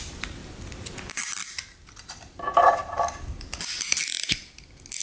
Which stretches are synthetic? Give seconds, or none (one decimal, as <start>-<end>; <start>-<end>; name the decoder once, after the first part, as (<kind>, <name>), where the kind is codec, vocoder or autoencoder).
none